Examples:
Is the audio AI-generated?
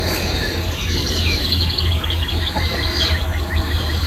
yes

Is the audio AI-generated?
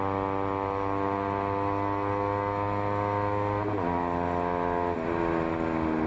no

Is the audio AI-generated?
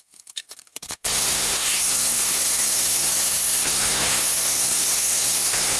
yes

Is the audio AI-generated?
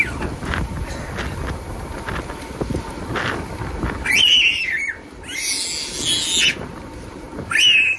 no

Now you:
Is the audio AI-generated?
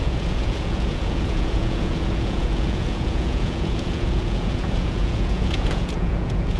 yes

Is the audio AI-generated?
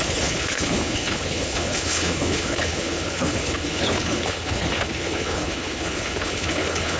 yes